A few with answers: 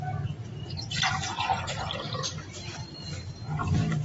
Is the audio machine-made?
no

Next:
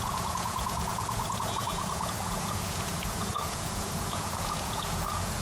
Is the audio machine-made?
yes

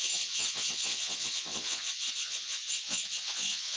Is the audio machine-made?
yes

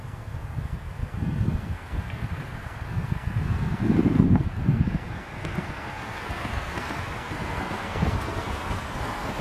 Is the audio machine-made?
yes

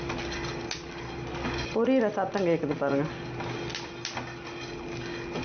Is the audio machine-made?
no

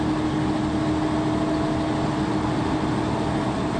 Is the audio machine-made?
no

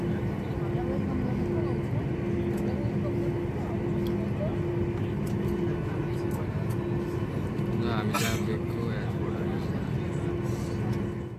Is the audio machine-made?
no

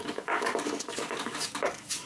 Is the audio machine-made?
yes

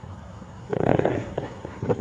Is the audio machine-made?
yes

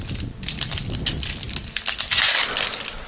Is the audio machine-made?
no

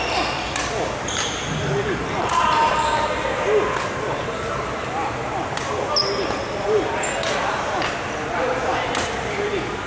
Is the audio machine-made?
no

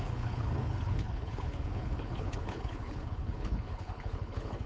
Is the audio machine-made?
yes